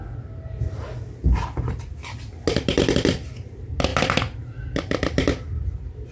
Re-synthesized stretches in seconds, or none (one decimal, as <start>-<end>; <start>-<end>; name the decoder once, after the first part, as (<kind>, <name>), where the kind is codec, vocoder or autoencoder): 3.9-4.5 (vocoder, BigVGAN v2)